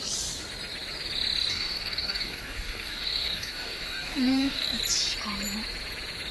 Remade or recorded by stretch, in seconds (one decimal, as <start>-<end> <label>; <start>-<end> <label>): 0.0-1.5 recorded; 1.5-4.8 remade; 4.8-6.3 recorded